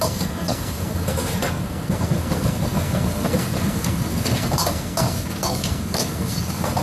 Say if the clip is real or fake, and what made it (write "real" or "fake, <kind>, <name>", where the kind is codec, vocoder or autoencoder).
fake, codec, SNAC